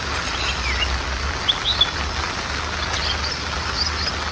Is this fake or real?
real